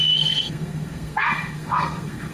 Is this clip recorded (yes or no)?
no